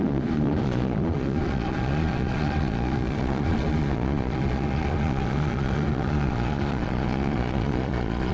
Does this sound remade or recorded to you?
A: remade